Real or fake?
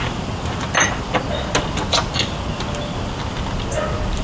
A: real